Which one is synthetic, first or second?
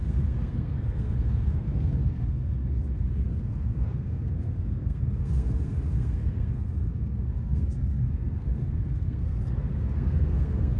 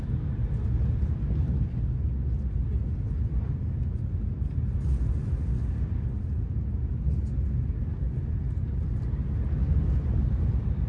first